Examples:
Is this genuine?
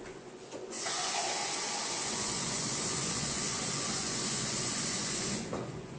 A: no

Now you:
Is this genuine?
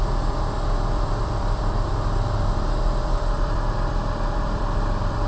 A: no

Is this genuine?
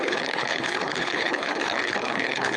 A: no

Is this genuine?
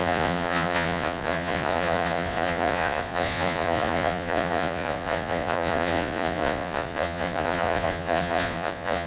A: no